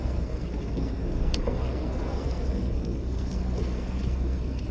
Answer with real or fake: fake